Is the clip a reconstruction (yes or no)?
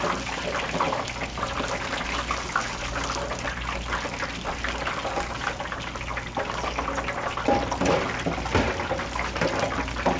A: no